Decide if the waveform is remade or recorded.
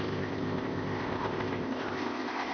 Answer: remade